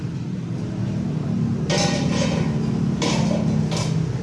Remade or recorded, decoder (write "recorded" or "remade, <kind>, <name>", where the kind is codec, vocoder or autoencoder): recorded